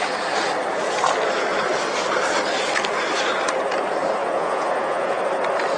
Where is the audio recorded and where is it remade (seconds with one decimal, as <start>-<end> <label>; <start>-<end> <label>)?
0.0-4.2 recorded; 4.2-5.2 remade; 5.2-5.8 recorded